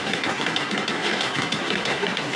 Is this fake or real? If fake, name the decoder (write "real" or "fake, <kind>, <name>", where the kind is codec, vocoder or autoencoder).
fake, codec, SNAC